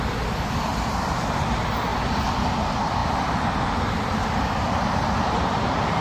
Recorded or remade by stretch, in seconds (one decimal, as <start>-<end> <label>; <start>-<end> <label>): 0.0-6.0 recorded